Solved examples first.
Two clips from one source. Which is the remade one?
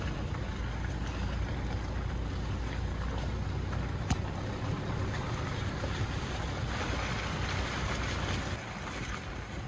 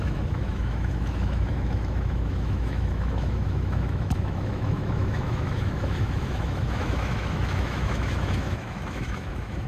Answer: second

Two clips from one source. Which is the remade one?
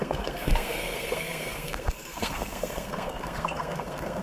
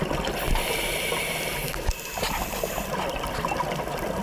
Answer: first